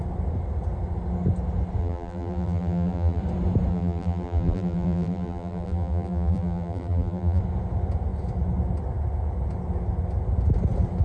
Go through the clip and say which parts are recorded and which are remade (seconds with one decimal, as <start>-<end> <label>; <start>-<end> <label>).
0.0-1.8 recorded; 1.8-3.2 remade; 3.2-3.7 recorded; 3.7-7.4 remade; 7.4-11.0 recorded